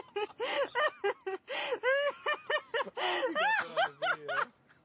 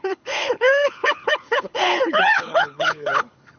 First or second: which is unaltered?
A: first